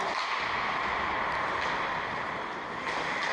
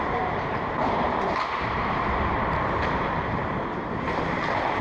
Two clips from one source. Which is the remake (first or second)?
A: second